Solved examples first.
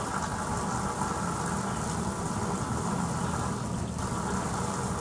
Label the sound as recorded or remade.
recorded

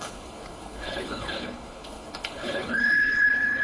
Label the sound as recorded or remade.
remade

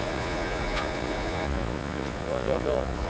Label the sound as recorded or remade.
remade